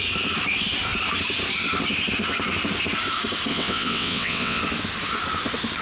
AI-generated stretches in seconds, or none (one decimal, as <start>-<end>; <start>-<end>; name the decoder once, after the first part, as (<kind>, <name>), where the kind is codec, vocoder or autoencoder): 3.5-4.6 (vocoder, WaveNeXt)